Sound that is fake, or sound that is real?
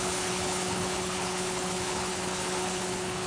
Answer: fake